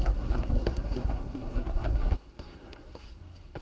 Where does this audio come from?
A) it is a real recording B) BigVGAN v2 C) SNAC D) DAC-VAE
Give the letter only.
C